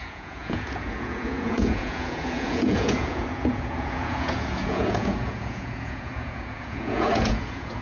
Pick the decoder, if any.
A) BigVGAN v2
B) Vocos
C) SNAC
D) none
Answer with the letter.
B